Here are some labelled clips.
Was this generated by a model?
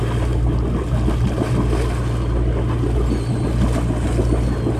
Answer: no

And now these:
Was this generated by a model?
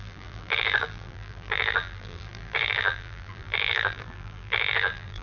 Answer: yes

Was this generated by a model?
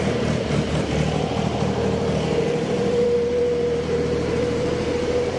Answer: yes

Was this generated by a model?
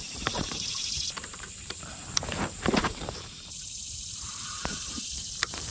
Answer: yes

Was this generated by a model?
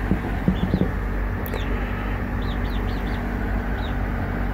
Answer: no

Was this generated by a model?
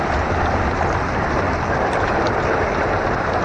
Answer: no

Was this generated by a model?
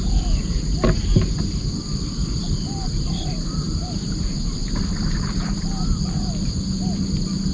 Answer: yes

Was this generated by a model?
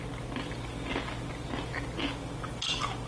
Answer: no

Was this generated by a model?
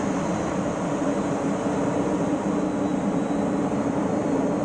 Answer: yes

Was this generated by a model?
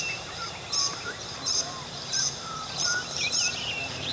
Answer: yes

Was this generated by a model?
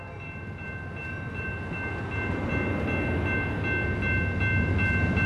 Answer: no